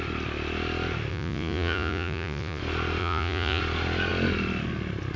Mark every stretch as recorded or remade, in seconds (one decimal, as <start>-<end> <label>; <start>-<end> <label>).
0.0-1.1 recorded; 1.1-2.6 remade; 2.6-3.0 recorded; 3.0-3.6 remade; 3.6-5.2 recorded

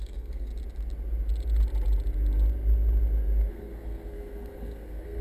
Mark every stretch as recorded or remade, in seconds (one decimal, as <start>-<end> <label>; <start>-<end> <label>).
0.0-0.5 remade; 0.5-3.5 recorded; 3.5-5.2 remade